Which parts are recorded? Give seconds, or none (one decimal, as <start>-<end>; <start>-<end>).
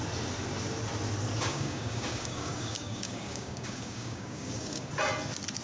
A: 0.0-1.5; 4.9-5.6